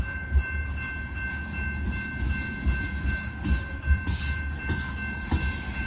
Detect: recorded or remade recorded